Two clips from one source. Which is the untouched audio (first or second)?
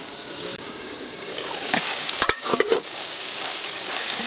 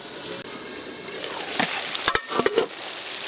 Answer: second